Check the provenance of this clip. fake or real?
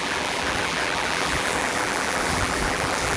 fake